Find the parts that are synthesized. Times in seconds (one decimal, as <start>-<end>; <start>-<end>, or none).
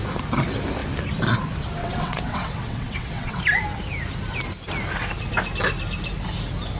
1.8-3.4